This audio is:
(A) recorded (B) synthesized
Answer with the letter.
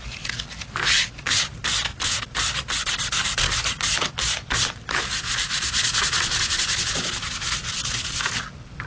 A